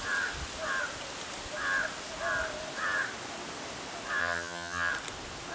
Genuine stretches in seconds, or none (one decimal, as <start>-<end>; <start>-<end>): 0.0-4.2; 4.9-5.5